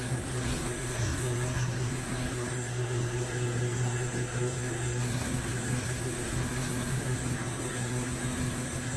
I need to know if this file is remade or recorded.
remade